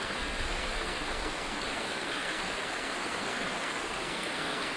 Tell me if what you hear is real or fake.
fake